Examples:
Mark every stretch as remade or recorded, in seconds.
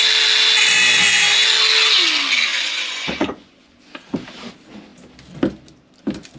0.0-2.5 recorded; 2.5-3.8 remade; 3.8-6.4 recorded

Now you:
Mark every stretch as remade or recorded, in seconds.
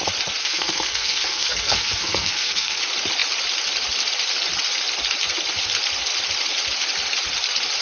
0.0-0.4 recorded; 0.4-2.8 remade; 2.8-7.8 recorded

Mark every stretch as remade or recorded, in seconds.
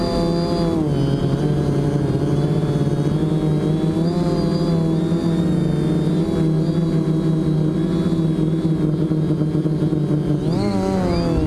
0.0-1.2 recorded; 1.2-2.9 remade; 2.9-11.5 recorded